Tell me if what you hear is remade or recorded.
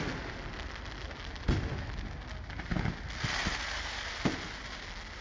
recorded